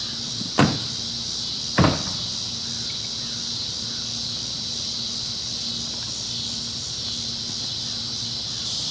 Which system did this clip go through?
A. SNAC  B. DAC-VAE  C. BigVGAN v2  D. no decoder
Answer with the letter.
D